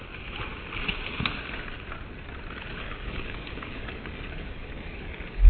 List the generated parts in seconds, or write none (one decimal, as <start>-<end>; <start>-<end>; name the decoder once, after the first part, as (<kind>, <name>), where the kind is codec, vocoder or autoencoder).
2.7-5.5 (codec, DAC)